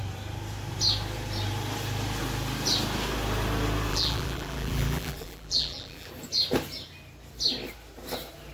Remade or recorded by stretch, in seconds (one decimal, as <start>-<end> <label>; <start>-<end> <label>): 0.0-3.9 recorded; 3.9-6.1 remade; 6.1-8.5 recorded